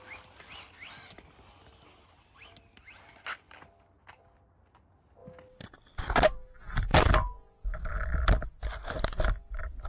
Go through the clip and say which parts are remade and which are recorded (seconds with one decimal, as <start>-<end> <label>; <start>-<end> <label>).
0.0-9.9 recorded